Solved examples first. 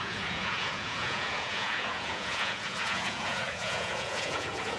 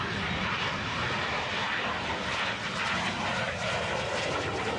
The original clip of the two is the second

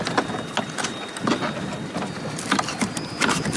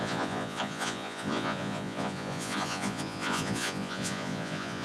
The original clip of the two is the first